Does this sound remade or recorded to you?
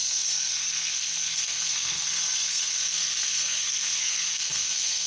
remade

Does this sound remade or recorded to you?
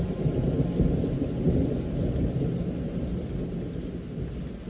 recorded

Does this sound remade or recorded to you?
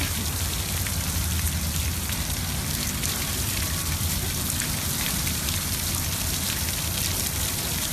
remade